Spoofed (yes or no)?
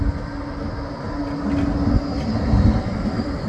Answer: no